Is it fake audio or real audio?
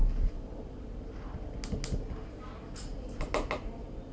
real